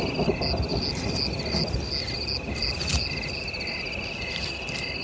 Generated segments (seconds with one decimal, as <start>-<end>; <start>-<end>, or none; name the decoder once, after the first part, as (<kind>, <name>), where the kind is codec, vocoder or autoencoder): none